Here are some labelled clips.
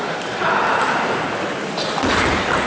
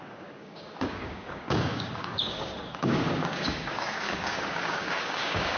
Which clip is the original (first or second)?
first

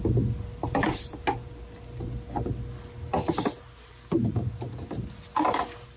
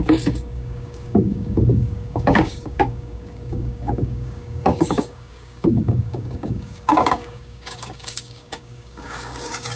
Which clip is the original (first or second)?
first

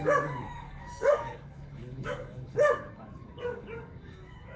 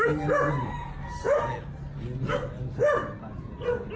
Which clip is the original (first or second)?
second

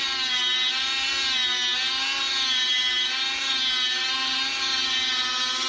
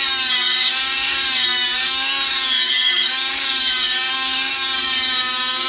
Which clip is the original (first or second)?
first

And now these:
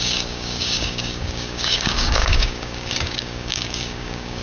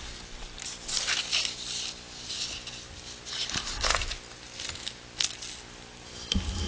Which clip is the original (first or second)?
second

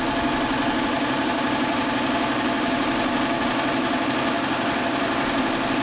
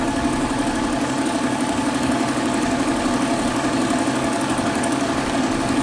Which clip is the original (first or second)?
first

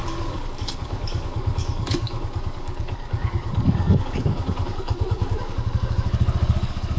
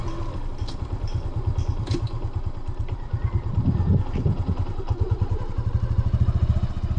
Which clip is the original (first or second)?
second